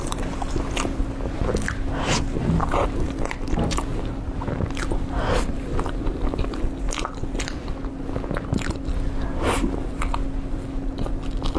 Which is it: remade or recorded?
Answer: recorded